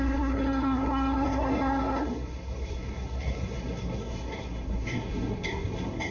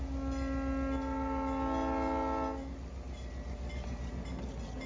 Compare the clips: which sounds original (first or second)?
second